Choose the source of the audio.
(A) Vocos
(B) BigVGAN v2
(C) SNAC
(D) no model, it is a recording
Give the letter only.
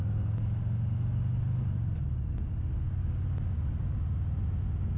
D